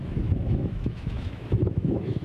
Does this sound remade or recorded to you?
remade